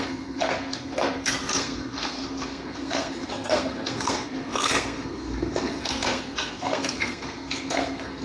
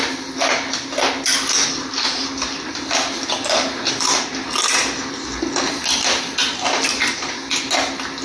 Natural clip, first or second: second